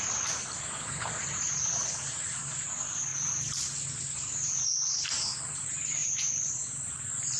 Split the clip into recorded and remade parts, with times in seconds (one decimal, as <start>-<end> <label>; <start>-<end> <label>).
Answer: 0.0-3.1 remade; 3.1-4.0 recorded; 4.0-7.4 remade